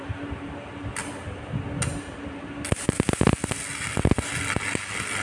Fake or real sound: real